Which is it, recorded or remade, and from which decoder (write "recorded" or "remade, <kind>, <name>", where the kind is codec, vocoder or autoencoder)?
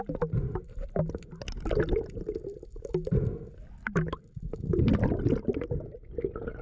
recorded